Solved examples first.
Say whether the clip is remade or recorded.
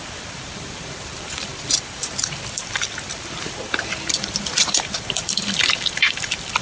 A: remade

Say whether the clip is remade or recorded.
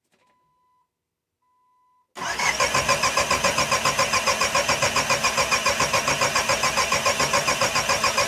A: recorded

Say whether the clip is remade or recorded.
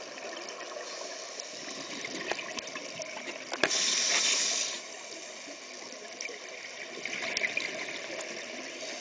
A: recorded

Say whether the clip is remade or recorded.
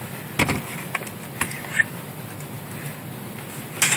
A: recorded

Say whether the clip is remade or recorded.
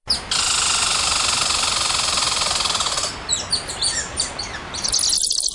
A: recorded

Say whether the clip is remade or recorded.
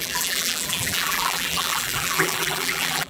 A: remade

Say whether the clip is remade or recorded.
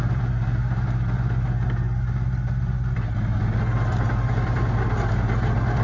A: recorded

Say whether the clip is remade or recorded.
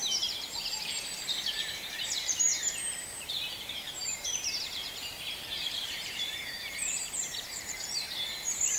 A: remade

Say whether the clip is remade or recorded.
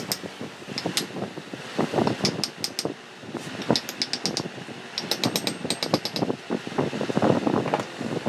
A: recorded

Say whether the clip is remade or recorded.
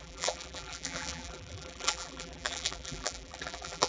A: remade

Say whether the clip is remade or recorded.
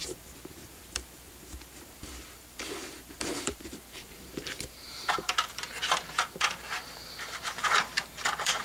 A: remade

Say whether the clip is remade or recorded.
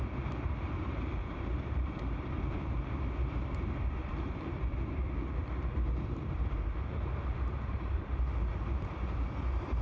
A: remade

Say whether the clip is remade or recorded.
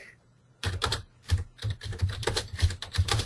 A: remade